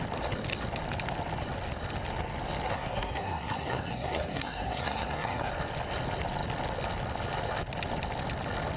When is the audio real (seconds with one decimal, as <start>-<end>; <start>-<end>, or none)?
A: 0.0-2.7; 5.5-8.8